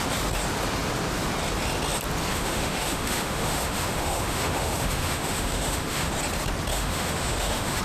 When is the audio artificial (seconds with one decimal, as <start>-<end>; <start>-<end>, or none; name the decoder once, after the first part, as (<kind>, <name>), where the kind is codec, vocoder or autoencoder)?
2.3-6.1 (autoencoder, DAC-VAE); 6.7-7.8